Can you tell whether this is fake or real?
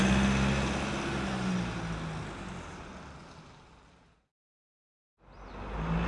real